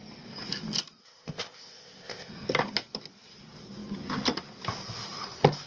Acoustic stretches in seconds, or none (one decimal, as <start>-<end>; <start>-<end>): 0.0-1.0; 2.3-5.7